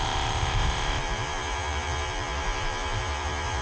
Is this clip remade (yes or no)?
yes